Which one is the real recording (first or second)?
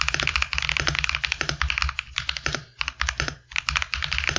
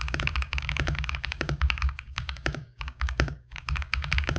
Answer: first